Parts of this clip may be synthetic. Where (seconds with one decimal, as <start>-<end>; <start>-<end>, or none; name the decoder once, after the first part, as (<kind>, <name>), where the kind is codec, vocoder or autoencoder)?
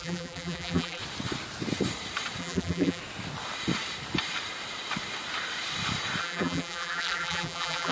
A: 0.0-1.0 (vocoder, BigVGAN v2); 2.4-3.0; 6.2-7.9